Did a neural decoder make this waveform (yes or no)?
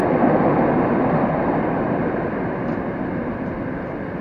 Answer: no